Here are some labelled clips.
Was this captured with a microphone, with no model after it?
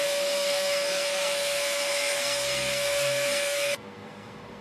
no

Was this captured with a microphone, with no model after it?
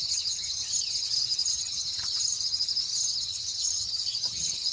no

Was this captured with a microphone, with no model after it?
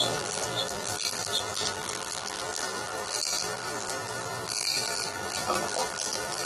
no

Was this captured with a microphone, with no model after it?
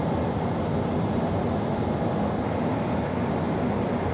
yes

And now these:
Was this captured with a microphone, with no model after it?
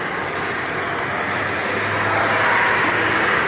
yes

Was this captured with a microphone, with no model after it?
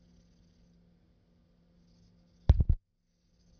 yes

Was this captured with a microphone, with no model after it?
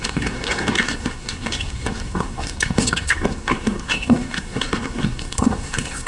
no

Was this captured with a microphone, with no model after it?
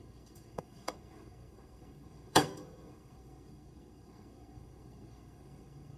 no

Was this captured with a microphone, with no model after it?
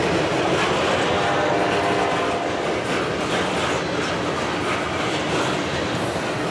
yes